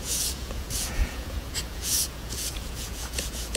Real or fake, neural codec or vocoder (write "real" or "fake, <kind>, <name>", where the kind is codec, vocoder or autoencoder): fake, vocoder, Vocos